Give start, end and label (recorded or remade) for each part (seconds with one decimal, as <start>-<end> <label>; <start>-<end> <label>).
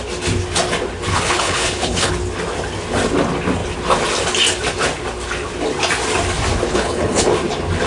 0.0-1.1 recorded; 1.1-2.1 remade; 2.1-6.7 recorded; 6.7-7.3 remade; 7.3-7.9 recorded